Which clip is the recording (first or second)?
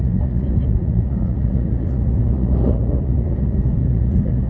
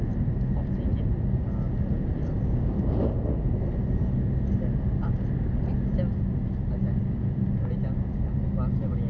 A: second